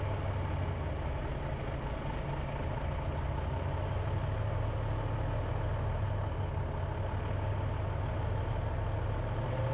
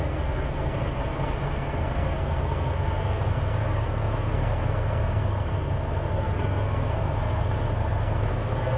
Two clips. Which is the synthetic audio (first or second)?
second